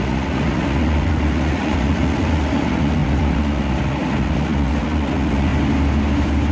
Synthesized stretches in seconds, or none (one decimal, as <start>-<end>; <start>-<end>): 0.0-5.5